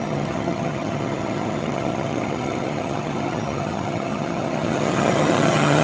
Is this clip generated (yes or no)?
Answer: yes